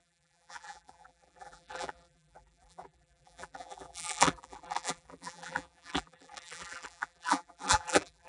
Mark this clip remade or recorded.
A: remade